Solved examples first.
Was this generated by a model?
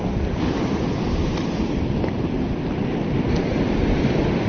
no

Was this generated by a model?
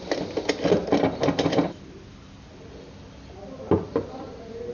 no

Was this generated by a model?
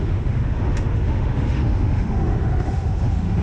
yes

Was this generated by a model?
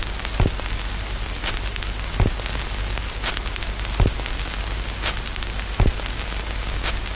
no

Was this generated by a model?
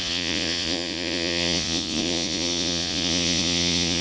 yes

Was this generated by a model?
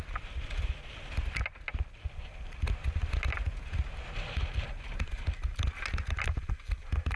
no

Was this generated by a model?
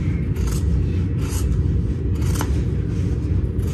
no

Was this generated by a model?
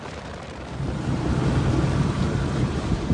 yes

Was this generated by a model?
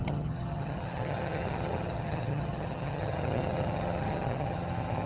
yes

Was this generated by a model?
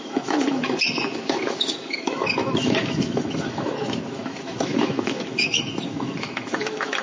yes